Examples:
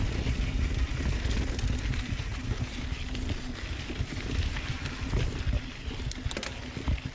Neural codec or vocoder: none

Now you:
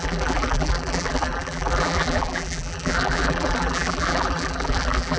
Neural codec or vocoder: vocoder, BigVGAN v2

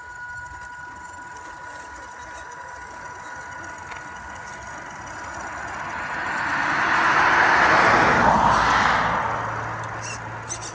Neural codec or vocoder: none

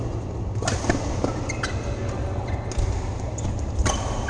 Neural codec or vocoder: none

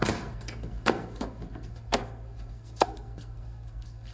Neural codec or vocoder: codec, SNAC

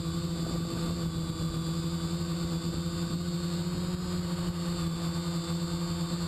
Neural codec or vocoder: none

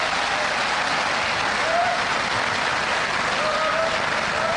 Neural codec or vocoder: none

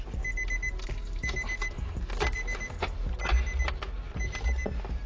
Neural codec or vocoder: none